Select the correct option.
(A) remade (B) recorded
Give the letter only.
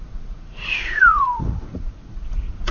A